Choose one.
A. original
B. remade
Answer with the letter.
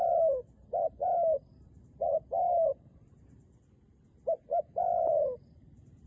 A